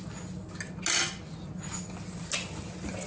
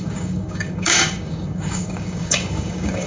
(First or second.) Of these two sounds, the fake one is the second